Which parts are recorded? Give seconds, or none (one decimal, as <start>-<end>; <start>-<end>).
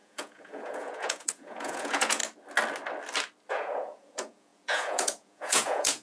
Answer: 2.2-3.5